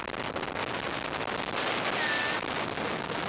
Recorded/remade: recorded